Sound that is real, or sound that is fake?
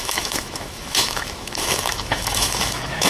fake